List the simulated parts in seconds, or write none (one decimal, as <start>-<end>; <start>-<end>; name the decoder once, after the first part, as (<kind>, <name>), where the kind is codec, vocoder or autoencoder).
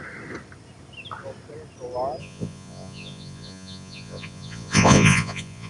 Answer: 2.2-5.7 (vocoder, Vocos)